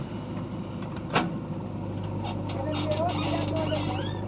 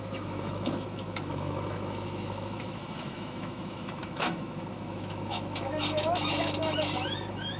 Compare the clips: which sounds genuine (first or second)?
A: first